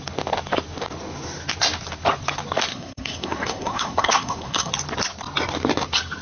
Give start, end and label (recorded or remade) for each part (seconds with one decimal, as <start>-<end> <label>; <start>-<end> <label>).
0.0-2.7 recorded; 2.7-4.7 remade; 4.7-6.2 recorded